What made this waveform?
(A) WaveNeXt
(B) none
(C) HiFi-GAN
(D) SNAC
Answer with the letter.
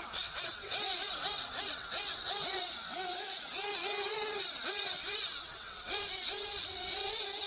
A